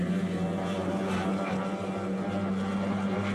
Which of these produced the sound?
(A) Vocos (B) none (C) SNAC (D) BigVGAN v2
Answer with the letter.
B